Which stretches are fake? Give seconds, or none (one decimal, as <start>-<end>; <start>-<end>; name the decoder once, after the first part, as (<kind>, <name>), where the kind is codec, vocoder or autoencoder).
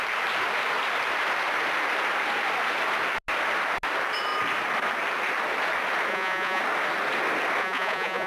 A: 6.1-6.6 (vocoder, Vocos); 7.6-8.3